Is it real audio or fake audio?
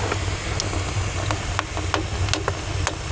real